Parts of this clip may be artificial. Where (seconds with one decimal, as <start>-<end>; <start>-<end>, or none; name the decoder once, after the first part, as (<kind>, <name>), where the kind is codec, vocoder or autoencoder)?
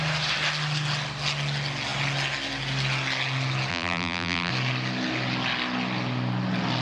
3.7-4.5 (vocoder, BigVGAN v2)